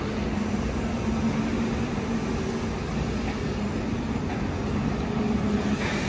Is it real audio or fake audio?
real